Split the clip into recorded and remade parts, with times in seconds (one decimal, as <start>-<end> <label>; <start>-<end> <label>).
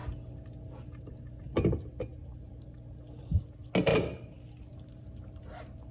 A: 0.0-2.1 recorded; 2.1-3.4 remade; 3.4-3.9 recorded; 3.9-4.5 remade; 4.5-5.9 recorded